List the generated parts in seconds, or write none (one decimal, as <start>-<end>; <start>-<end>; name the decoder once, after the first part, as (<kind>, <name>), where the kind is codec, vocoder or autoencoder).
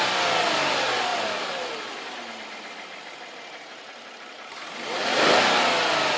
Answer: none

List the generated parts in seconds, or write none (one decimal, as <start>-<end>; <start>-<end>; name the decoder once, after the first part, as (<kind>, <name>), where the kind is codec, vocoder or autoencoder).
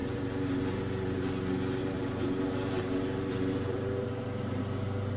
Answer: 0.0-1.3 (vocoder, BigVGAN v2); 1.8-4.6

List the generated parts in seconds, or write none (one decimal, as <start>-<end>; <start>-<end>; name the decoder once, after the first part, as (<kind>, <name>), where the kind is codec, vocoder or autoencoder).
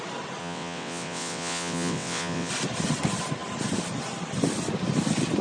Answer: 0.4-2.5 (vocoder, WaveNeXt)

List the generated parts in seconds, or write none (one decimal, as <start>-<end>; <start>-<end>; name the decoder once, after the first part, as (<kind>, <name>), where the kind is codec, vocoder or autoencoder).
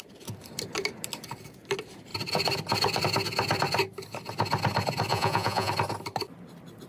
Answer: 5.1-5.7 (vocoder, Vocos)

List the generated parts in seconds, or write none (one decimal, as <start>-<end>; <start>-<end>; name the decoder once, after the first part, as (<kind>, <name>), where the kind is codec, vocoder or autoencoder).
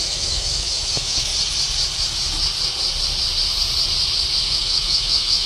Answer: 0.0-1.3 (autoencoder, DAC-VAE); 4.4-5.5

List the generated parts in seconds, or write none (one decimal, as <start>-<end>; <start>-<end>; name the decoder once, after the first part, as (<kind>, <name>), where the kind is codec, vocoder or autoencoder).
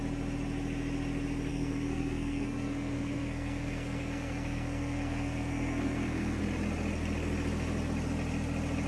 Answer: 1.5-6.4 (codec, SNAC)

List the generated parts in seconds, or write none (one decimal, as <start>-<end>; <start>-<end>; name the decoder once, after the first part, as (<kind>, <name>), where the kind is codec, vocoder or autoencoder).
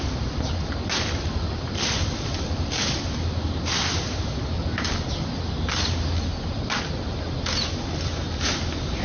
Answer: none